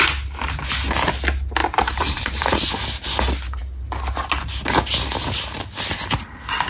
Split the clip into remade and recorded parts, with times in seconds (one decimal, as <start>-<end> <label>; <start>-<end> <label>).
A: 0.0-1.6 recorded; 1.6-2.7 remade; 2.7-6.7 recorded